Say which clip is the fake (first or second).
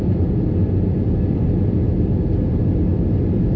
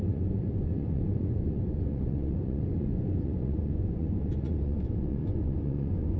second